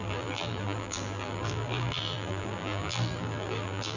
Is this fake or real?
fake